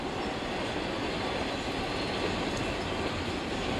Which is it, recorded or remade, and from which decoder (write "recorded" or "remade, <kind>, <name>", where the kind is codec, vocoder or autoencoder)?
recorded